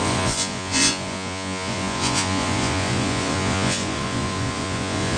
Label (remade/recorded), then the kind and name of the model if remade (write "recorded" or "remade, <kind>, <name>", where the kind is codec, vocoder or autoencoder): remade, vocoder, Vocos